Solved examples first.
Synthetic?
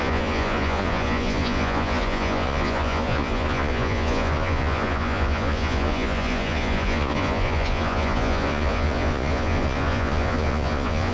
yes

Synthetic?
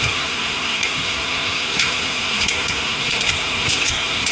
yes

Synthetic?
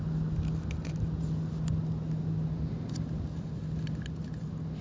no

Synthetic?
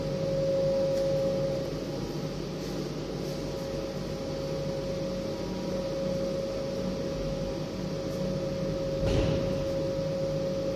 no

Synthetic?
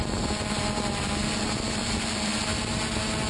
no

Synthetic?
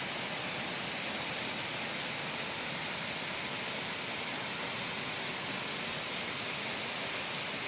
no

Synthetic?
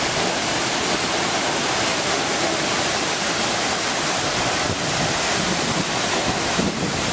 no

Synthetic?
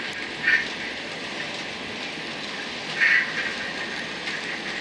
no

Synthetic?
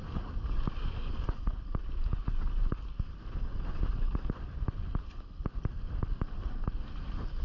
no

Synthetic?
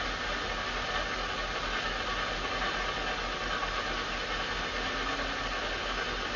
no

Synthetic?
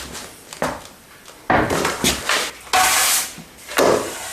no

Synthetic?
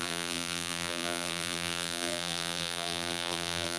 yes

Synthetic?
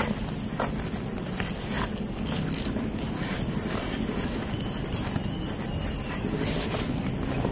no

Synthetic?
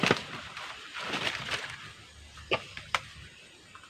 no